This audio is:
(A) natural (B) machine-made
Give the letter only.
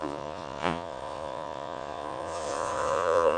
B